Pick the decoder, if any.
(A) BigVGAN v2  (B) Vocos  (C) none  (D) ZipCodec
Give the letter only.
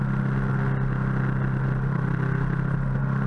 C